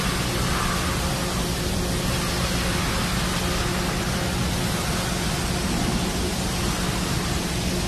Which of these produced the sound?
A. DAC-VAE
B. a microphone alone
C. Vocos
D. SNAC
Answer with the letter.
B